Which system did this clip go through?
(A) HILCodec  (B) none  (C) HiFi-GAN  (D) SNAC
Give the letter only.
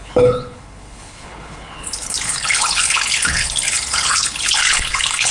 A